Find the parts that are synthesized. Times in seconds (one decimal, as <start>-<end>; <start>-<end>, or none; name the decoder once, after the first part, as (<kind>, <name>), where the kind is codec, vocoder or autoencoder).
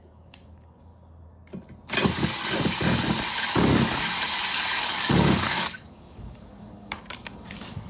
0.0-0.9 (codec, DAC); 4.8-7.9